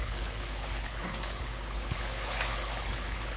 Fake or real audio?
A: fake